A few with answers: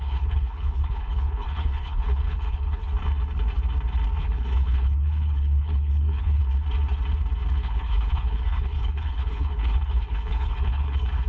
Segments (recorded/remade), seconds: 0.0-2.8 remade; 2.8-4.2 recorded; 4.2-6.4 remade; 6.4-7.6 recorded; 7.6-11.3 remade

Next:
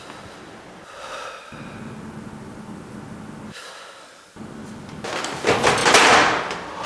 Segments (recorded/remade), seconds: 0.0-6.9 recorded